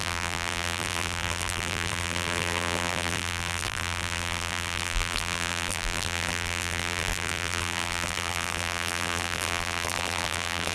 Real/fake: fake